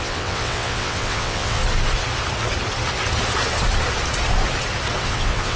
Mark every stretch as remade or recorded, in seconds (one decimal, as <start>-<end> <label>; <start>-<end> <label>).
0.0-1.6 remade; 1.6-5.0 recorded; 5.0-5.6 remade